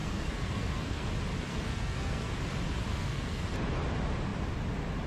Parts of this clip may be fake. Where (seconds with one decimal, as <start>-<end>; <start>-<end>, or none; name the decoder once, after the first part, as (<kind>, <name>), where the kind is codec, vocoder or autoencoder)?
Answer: 0.0-1.1 (codec, SNAC); 1.5-2.4; 2.9-3.4